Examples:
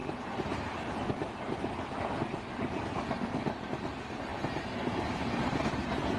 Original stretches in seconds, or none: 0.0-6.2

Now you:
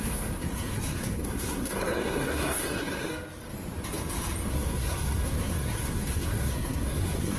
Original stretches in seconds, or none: 3.1-4.5

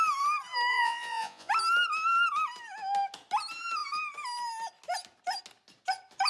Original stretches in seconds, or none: 0.0-0.7; 1.5-6.3

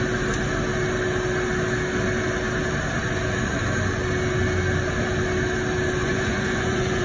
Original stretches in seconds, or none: 0.0-6.0